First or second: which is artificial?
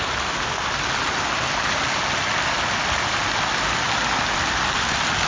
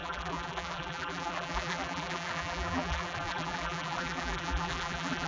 second